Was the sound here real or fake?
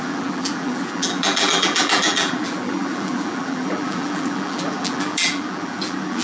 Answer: fake